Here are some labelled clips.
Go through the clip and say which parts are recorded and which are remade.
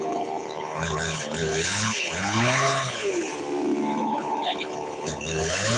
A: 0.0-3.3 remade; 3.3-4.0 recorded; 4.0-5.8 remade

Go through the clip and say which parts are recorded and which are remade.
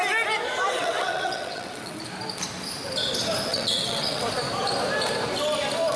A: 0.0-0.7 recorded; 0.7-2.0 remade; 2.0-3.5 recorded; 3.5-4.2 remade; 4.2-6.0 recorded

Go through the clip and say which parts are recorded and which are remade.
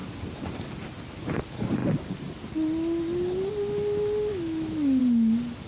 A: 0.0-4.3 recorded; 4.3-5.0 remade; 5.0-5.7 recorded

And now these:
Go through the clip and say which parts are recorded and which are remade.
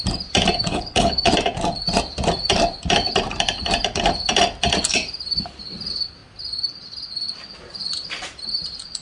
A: 0.0-0.7 recorded; 0.7-1.3 remade; 1.3-9.0 recorded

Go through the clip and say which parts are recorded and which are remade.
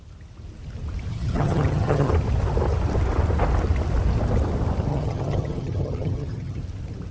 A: 0.0-1.1 recorded; 1.1-2.1 remade; 2.1-4.9 recorded; 4.9-6.6 remade; 6.6-7.1 recorded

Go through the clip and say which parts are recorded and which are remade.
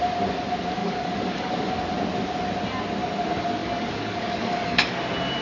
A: 0.0-0.8 recorded; 0.8-1.8 remade; 1.8-3.6 recorded; 3.6-5.0 remade; 5.0-5.4 recorded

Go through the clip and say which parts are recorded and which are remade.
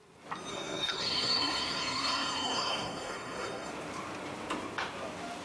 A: 0.0-0.5 recorded; 0.5-3.7 remade; 3.7-5.4 recorded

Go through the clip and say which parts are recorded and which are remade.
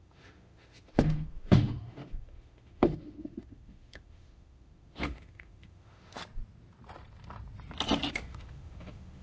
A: 0.0-6.2 remade; 6.2-8.1 recorded; 8.1-9.2 remade